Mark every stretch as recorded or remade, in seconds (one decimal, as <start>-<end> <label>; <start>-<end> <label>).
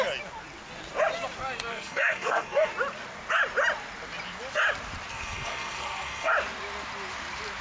0.0-1.7 recorded; 1.7-2.7 remade; 2.7-5.1 recorded; 5.1-6.3 remade; 6.3-7.6 recorded